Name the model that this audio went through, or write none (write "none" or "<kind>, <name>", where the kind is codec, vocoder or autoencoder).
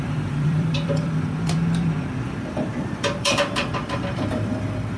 vocoder, BigVGAN v2